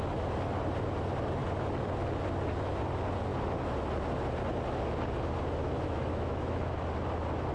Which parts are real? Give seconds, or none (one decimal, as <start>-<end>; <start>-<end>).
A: 0.0-5.6; 6.7-7.5